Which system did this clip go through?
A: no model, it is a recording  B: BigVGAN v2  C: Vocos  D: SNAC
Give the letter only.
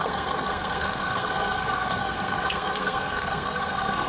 D